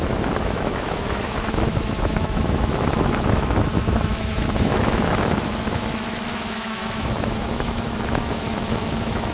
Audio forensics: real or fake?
fake